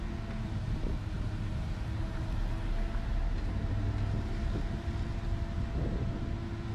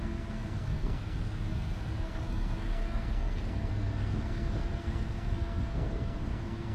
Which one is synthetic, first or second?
second